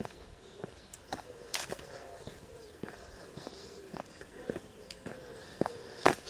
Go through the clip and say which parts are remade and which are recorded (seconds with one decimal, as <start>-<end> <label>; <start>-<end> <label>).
0.0-6.3 remade

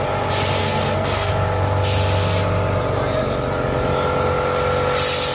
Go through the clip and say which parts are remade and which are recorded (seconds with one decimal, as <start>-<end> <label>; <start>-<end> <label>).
0.0-0.6 recorded; 0.6-1.3 remade; 1.3-5.3 recorded

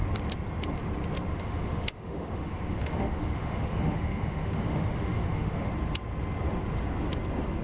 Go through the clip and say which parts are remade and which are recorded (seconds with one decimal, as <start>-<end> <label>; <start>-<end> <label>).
0.0-1.3 recorded; 1.3-5.7 remade; 5.7-7.6 recorded

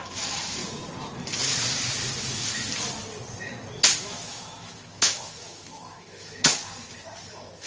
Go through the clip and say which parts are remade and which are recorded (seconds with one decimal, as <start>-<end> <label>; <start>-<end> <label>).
0.0-0.6 remade; 0.6-4.0 recorded; 4.0-6.6 remade; 6.6-7.3 recorded; 7.3-7.7 remade

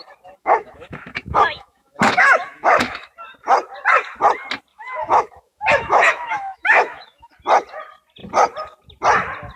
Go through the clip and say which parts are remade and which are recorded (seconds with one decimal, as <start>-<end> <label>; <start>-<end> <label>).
0.0-0.4 recorded; 0.4-3.1 remade; 3.1-4.7 recorded; 4.7-7.3 remade; 7.3-9.6 recorded

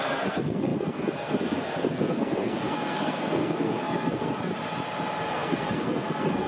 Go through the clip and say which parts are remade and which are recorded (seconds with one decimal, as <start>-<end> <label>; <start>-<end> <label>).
0.0-4.5 remade; 4.5-5.3 recorded; 5.3-6.5 remade

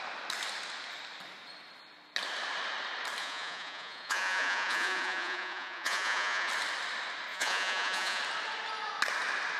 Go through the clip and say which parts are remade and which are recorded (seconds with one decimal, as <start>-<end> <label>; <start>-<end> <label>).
0.0-3.2 recorded; 3.2-6.5 remade; 6.5-7.3 recorded; 7.3-8.2 remade; 8.2-9.6 recorded

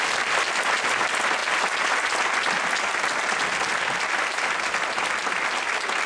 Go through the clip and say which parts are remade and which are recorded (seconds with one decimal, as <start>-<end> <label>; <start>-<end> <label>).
0.0-6.1 recorded